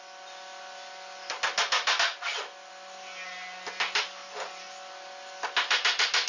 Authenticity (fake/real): real